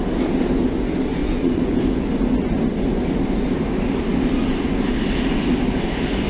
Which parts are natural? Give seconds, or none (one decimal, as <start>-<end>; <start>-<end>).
0.0-1.2; 1.8-6.3

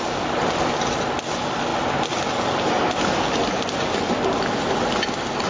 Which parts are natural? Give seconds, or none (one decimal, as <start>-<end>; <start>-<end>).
0.0-5.5

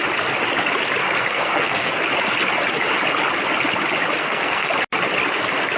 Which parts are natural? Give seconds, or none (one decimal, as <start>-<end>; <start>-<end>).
0.0-1.0; 1.9-4.2; 4.7-5.8

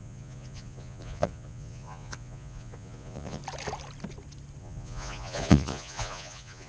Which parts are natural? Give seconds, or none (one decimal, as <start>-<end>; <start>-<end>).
3.4-4.6

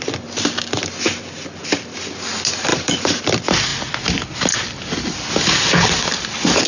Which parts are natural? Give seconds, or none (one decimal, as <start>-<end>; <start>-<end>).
0.0-2.7; 3.2-6.7

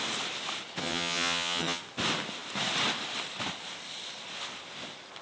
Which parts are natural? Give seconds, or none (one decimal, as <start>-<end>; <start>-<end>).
0.0-0.8; 1.8-5.2

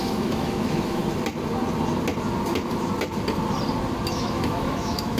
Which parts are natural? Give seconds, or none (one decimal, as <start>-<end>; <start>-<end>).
1.0-4.1